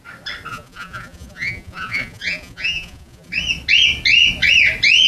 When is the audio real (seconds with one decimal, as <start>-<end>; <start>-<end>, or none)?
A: 0.0-0.5; 3.3-5.1